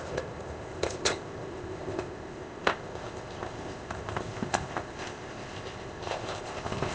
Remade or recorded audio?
remade